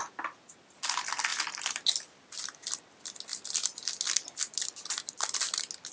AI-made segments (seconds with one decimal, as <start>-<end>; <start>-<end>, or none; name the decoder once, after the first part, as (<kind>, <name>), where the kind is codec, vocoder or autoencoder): none